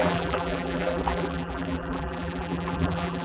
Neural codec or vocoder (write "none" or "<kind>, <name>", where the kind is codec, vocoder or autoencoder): vocoder, BigVGAN v2